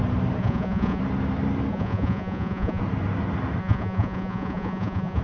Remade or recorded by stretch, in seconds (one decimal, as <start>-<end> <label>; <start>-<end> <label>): 0.0-0.4 recorded; 0.4-1.0 remade; 1.0-1.7 recorded; 1.7-2.8 remade; 2.8-3.6 recorded; 3.6-5.2 remade